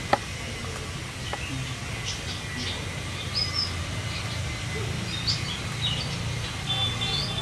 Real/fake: real